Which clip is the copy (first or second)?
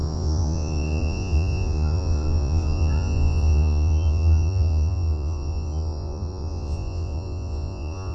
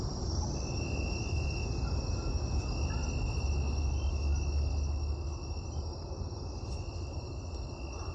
first